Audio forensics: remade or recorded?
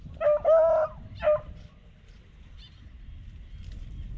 recorded